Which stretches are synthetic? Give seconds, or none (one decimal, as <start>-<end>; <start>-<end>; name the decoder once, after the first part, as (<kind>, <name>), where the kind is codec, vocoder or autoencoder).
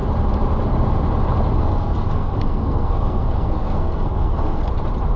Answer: 1.6-4.7 (codec, SNAC)